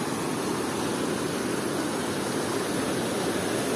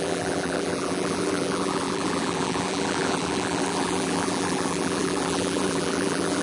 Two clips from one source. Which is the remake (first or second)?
second